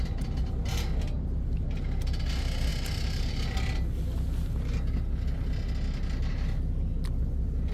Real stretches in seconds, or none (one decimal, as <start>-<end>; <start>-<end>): 0.0-7.7